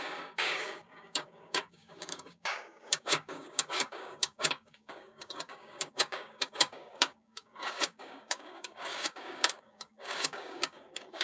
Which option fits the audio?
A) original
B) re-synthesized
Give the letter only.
B